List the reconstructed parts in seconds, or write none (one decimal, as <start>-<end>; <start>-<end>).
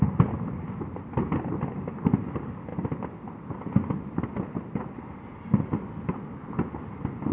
none